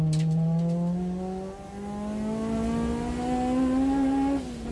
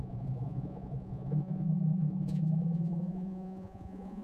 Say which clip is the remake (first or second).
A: second